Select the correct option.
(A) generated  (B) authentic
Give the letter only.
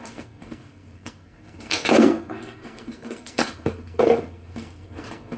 A